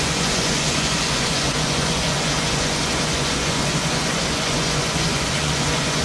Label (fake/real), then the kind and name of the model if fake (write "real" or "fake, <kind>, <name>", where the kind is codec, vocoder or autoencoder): fake, vocoder, Vocos